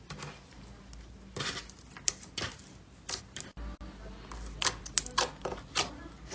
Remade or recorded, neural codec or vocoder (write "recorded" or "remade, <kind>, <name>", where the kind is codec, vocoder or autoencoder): recorded